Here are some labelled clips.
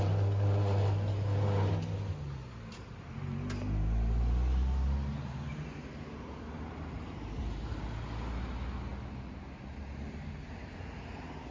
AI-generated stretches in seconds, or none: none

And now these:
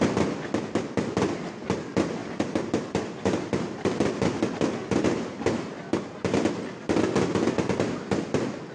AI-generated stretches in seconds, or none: 2.2-5.5 (vocoder, BigVGAN v2)

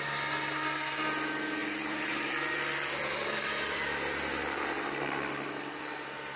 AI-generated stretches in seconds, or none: 1.6-2.3 (vocoder, BigVGAN v2)

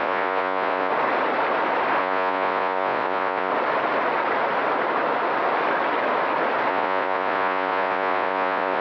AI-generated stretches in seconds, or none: 0.0-0.9 (vocoder, Vocos); 2.0-3.5; 6.7-8.8

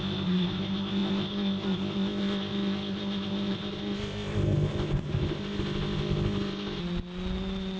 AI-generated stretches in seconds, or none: 0.0-6.8 (codec, ZipCodec)

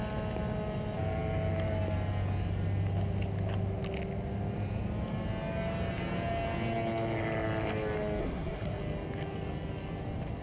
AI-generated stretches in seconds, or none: 8.2-8.8 (codec, SNAC)

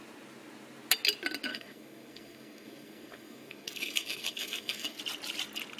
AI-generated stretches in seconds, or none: 1.5-5.0 (codec, SNAC)

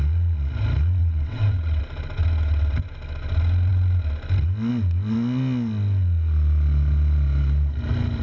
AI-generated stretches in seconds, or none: 1.0-1.8 (vocoder, WaveNeXt)